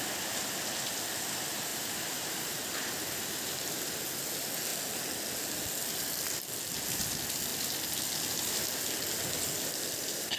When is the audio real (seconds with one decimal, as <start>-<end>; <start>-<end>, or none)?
0.0-1.7; 3.8-10.4